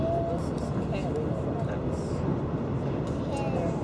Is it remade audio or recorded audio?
recorded